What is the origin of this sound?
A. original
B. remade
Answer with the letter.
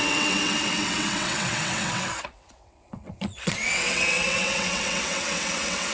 B